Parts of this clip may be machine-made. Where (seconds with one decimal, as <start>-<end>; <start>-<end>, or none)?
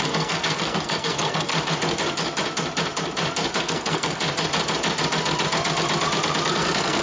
0.0-1.5; 3.6-4.2; 6.5-7.0